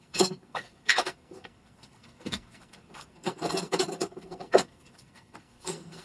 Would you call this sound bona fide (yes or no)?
no